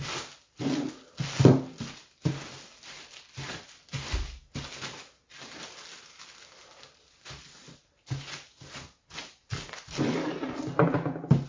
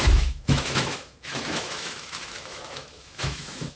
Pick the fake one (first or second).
second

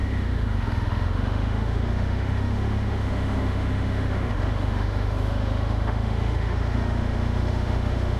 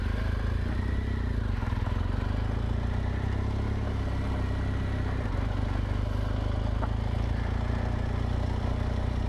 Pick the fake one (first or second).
first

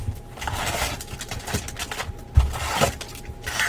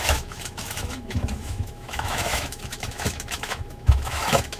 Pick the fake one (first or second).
second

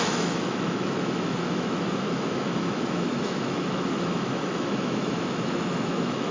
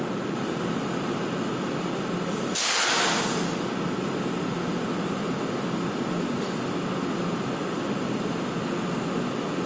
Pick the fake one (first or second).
first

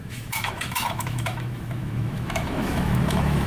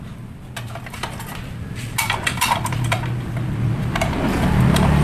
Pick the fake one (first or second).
first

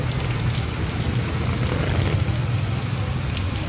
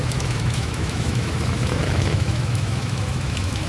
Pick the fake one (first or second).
second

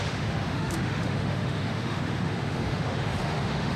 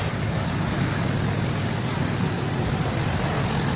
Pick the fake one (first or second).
first